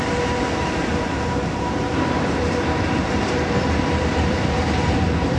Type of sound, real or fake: fake